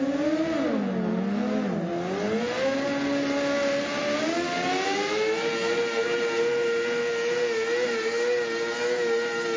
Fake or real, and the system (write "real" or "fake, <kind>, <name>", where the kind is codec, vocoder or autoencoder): real